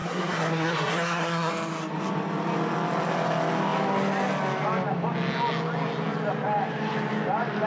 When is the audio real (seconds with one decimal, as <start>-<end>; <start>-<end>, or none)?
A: 1.5-7.7